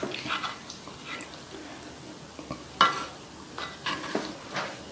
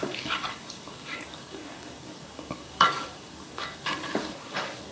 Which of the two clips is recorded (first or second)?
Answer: first